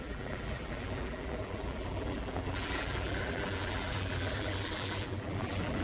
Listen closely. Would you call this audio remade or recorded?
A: remade